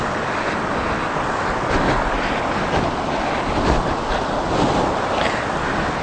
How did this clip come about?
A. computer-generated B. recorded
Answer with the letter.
B